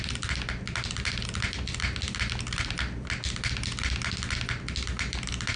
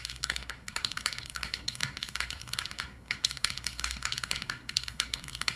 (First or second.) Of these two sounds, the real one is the first